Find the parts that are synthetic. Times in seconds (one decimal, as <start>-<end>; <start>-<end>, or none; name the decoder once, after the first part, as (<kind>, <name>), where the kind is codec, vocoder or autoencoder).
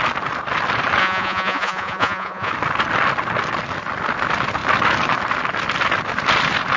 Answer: 1.0-2.5 (vocoder, Vocos)